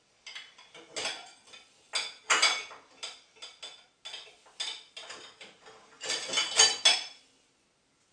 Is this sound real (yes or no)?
yes